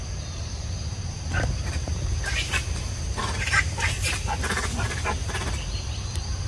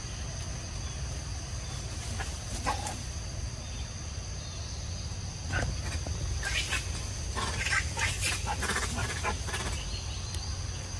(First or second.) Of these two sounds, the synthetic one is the first